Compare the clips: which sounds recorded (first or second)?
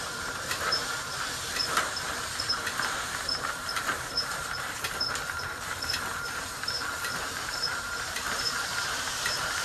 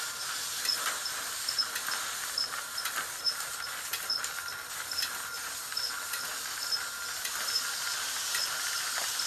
second